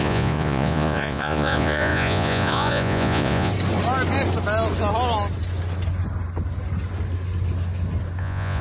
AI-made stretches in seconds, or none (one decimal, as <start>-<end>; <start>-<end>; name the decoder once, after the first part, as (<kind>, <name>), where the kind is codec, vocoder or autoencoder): 0.0-3.5 (vocoder, Vocos); 8.2-8.6